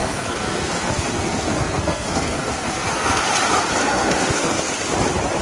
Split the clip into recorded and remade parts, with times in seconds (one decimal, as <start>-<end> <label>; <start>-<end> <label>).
0.0-3.2 remade; 3.2-3.8 recorded; 3.8-4.7 remade; 4.7-5.4 recorded